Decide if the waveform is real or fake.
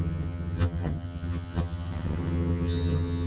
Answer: fake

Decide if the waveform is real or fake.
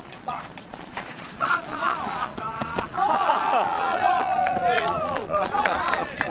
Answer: fake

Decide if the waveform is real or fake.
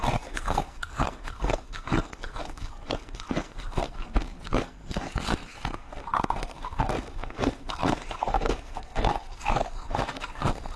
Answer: fake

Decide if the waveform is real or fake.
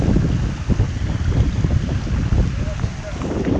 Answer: real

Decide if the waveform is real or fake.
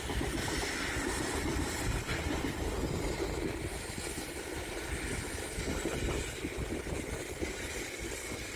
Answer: real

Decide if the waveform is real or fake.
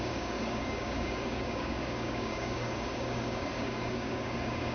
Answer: fake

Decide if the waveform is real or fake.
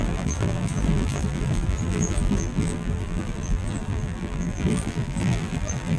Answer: fake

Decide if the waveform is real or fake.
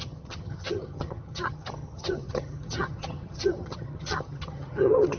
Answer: fake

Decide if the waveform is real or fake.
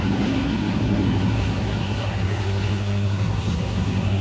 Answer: fake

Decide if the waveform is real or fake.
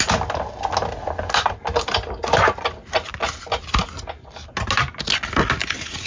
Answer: real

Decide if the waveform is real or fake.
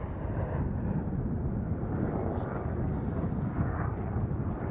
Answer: real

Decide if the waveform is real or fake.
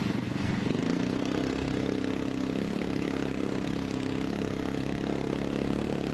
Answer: fake